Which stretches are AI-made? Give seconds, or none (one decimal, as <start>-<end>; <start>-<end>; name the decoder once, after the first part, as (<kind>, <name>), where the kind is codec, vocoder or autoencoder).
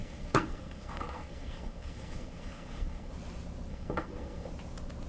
0.0-3.1 (codec, SNAC); 3.7-4.5